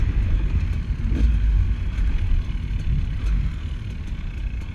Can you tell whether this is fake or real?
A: real